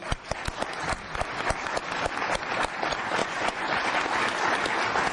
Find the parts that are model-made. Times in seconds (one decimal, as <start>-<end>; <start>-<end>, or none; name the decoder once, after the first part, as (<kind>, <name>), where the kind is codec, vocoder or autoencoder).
3.2-3.9 (vocoder, Vocos)